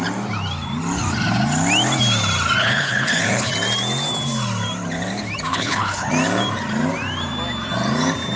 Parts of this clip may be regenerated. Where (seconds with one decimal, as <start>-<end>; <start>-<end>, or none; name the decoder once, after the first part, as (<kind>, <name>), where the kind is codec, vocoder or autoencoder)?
2.6-3.5 (codec, HILCodec); 5.5-6.1